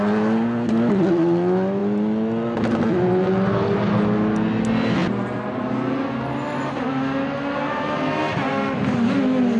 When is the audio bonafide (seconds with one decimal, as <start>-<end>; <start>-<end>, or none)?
0.0-9.6